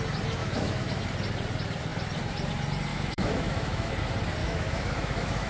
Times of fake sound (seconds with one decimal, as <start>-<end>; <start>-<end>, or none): 0.4-1.0; 2.9-3.9; 4.4-5.5